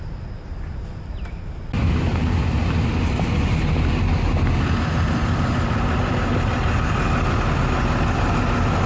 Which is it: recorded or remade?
recorded